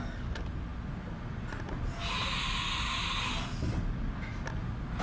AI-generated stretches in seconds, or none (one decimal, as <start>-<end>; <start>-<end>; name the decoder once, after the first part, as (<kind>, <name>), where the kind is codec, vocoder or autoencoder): none